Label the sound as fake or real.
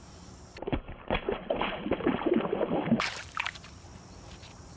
fake